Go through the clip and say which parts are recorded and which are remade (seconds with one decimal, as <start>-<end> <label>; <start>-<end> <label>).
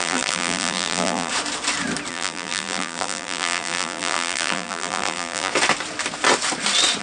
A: 0.0-1.3 remade; 1.3-2.1 recorded; 2.1-5.5 remade; 5.5-7.0 recorded